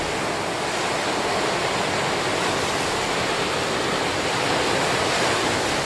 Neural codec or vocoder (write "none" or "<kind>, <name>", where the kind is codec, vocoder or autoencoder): none